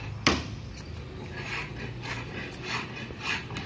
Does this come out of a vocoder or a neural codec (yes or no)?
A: no